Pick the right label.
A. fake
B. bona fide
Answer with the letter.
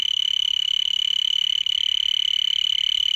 B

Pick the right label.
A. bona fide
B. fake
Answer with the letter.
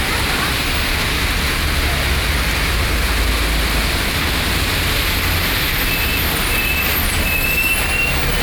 A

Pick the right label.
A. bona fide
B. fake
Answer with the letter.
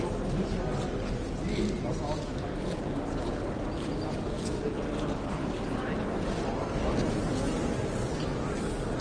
A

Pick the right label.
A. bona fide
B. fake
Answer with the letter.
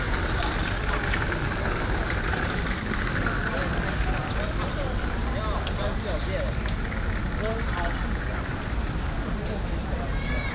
A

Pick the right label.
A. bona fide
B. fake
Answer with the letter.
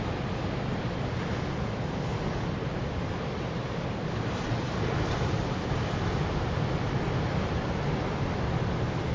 A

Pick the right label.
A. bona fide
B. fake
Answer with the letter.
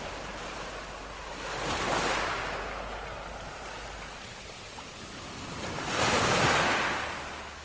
A